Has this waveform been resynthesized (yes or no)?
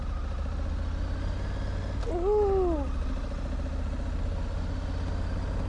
no